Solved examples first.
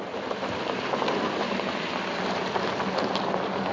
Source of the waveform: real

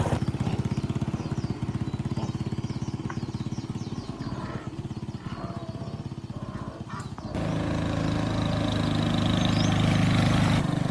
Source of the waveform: real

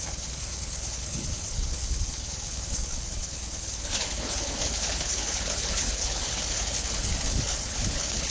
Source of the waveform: fake